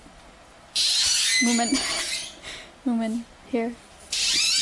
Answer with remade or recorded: recorded